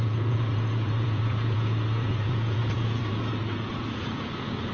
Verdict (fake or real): fake